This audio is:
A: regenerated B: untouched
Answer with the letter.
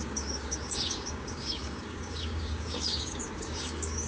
A